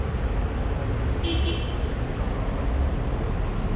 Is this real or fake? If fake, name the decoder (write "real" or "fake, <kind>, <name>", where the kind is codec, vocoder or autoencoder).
real